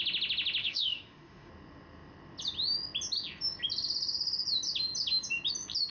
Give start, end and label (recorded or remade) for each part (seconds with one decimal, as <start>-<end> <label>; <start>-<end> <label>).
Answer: 0.0-0.6 recorded; 0.6-1.5 remade; 1.5-5.9 recorded